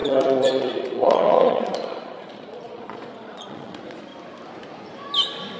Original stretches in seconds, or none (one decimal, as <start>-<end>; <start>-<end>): 4.1-5.6